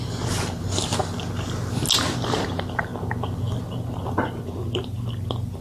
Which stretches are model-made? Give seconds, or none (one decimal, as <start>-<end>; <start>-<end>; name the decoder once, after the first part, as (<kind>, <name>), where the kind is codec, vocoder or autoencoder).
none